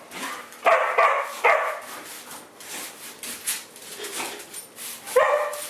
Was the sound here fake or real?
real